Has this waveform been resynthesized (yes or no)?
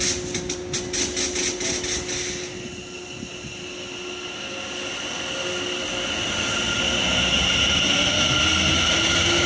no